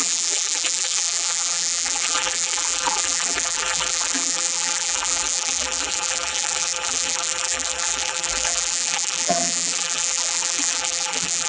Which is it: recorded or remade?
remade